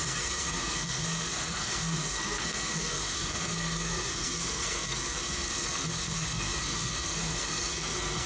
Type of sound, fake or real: fake